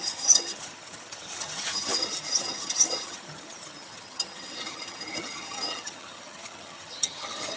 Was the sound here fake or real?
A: fake